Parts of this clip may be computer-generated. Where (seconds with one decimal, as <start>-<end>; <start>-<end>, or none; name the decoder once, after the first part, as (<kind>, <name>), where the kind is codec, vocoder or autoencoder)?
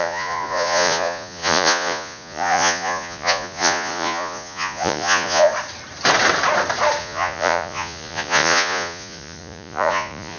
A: 0.0-5.5 (vocoder, Vocos); 7.0-10.4